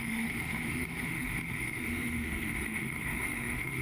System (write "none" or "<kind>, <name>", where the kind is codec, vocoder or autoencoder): autoencoder, DAC-VAE